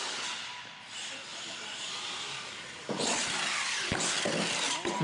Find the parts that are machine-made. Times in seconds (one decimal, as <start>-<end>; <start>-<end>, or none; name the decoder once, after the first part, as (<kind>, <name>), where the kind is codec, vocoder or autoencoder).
none